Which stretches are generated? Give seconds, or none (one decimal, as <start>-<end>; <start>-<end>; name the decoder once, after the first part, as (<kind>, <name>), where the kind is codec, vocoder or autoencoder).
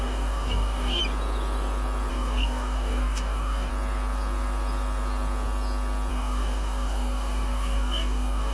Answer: 0.0-1.0 (codec, DAC); 2.1-3.7; 6.1-8.5